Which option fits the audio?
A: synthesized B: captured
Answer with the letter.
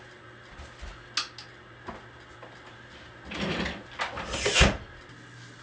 B